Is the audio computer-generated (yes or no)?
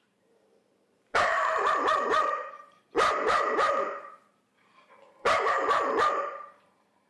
yes